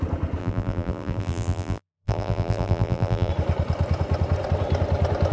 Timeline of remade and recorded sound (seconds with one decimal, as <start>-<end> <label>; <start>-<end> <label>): 0.0-0.4 recorded; 0.4-3.3 remade; 3.3-5.3 recorded